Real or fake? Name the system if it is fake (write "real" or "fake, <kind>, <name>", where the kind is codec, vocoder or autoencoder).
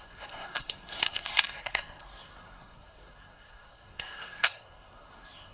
fake, codec, SNAC